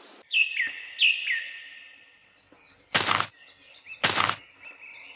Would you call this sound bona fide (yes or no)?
yes